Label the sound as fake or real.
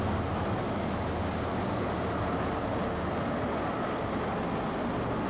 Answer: real